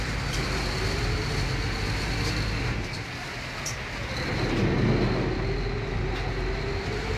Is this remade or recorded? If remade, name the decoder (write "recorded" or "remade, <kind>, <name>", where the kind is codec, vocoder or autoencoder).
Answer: recorded